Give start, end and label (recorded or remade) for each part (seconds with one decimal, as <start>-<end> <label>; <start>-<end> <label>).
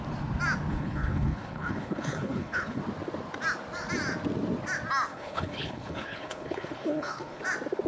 0.0-0.7 recorded; 0.7-2.8 remade; 2.8-5.1 recorded; 5.1-7.4 remade; 7.4-7.9 recorded